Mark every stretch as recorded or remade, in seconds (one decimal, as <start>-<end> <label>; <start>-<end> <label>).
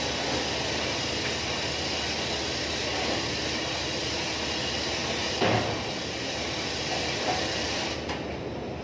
0.0-8.8 recorded